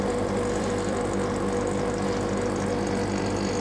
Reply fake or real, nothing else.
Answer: fake